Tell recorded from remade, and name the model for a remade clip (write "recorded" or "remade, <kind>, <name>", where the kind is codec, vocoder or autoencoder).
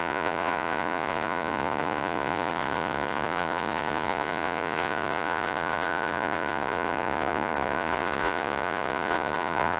remade, vocoder, Vocos